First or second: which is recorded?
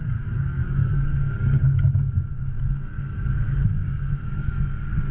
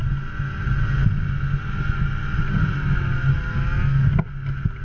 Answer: second